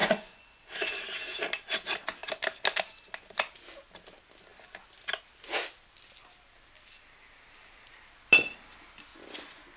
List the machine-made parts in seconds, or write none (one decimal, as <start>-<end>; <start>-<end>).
0.0-0.6; 9.1-9.8